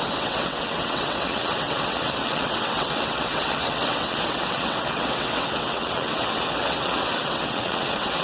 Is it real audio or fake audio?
fake